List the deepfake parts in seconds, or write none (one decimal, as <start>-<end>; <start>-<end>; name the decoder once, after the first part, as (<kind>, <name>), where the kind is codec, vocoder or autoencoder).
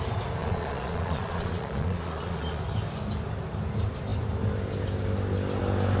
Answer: 0.4-2.6 (vocoder, Vocos)